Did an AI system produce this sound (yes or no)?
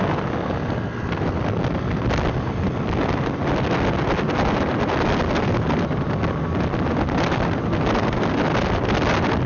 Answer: no